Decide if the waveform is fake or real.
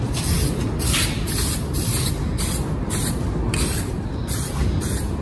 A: real